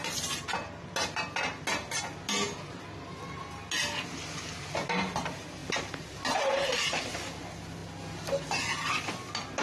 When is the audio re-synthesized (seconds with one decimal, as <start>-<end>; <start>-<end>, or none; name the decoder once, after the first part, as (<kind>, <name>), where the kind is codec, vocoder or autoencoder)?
none